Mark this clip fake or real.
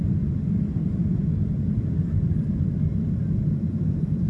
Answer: real